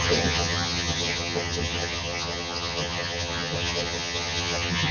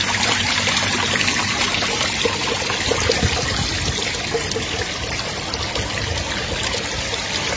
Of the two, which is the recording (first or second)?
second